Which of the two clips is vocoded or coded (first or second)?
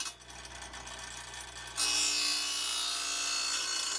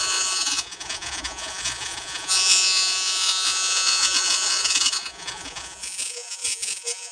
second